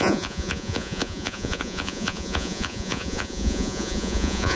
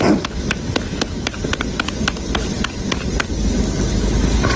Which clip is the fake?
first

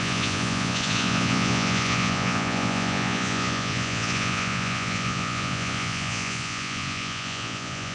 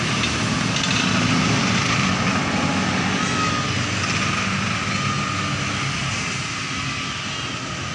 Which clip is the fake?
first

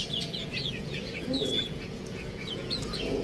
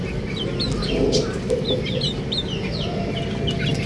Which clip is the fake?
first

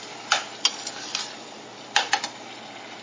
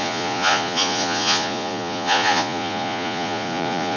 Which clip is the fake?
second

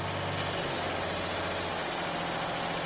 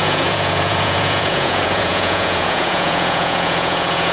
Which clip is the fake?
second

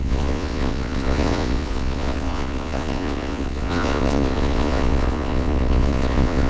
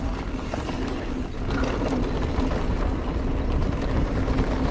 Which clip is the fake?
first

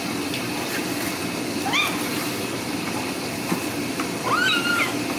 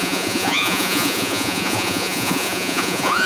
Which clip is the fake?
second